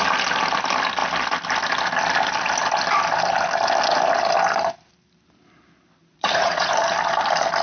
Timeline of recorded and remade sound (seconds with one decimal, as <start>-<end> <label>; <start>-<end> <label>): 0.0-6.0 recorded; 6.0-6.7 remade; 6.7-7.6 recorded

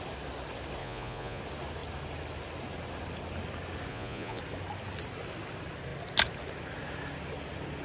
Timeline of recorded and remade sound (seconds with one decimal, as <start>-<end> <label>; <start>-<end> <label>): 0.0-0.8 recorded; 0.8-1.4 remade; 1.4-3.9 recorded; 3.9-4.4 remade; 4.4-7.8 recorded